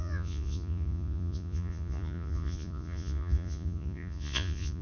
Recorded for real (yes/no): no